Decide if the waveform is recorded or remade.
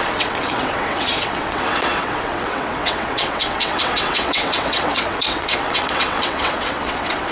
remade